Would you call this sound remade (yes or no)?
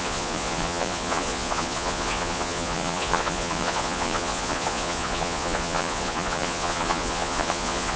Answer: yes